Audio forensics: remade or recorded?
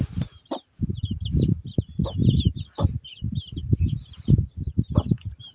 recorded